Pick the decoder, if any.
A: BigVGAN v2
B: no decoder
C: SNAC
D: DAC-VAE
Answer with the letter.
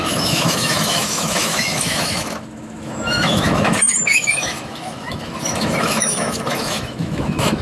D